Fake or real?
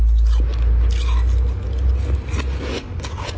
real